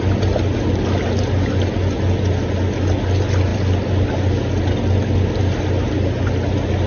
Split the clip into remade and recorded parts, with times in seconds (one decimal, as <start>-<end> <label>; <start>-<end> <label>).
0.0-6.9 recorded